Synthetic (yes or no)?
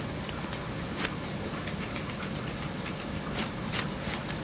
no